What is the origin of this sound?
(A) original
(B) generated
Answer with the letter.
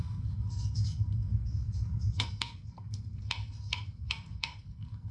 B